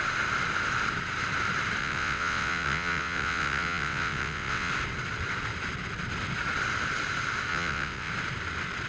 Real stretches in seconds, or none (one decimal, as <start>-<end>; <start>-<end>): 0.0-1.8; 4.7-7.5; 8.1-8.9